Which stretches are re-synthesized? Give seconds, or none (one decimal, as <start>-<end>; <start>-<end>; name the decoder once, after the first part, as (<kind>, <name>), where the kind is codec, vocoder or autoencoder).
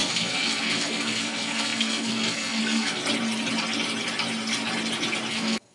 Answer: 0.0-3.0 (codec, SNAC); 5.3-5.7